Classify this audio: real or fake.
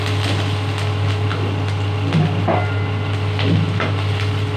real